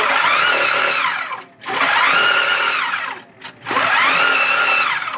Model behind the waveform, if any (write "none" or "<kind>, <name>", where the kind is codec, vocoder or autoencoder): none